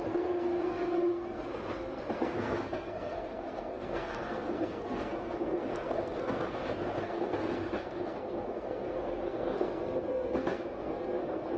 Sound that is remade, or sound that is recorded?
remade